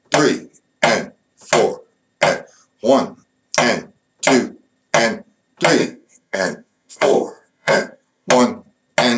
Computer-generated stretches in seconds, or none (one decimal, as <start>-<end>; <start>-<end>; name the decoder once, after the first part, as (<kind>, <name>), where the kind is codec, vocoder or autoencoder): 5.8-8.3 (codec, SNAC)